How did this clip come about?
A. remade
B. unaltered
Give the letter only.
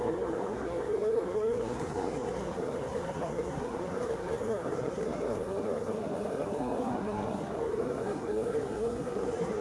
A